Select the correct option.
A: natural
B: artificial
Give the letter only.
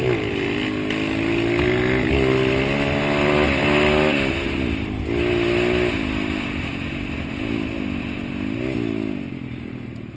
A